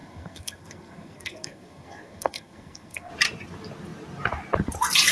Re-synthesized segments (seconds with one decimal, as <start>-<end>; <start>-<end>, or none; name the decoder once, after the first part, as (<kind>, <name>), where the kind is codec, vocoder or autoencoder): 0.0-3.1 (codec, SNAC)